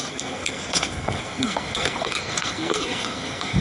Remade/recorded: remade